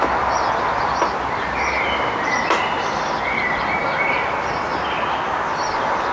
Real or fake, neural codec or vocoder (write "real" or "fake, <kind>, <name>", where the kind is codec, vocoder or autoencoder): real